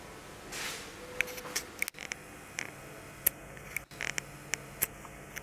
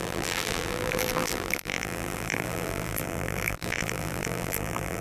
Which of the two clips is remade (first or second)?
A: second